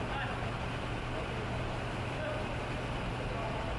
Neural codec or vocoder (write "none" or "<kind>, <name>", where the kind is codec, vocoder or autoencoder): none